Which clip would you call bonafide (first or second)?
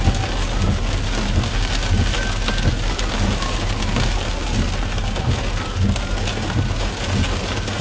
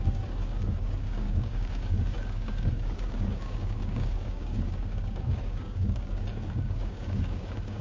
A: first